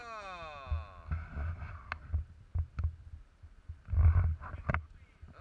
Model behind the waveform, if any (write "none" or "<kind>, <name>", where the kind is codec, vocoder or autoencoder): none